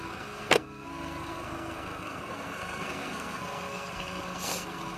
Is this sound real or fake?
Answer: fake